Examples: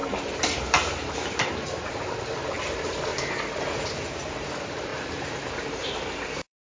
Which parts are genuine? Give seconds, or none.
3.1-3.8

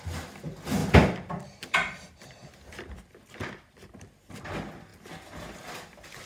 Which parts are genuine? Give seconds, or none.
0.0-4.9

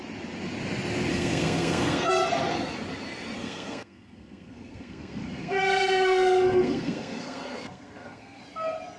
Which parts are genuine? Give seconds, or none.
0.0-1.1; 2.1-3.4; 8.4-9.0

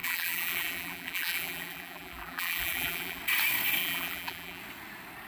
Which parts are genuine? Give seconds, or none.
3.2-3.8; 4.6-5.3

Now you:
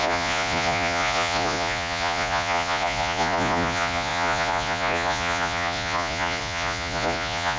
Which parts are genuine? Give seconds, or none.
none

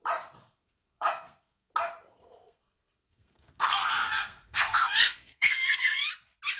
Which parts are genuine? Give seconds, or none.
0.0-0.4; 1.7-2.1; 6.1-6.6

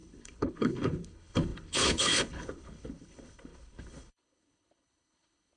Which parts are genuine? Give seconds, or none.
none

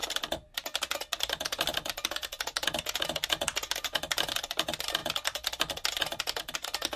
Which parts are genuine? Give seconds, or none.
0.0-7.0